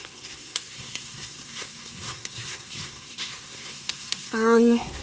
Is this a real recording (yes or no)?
no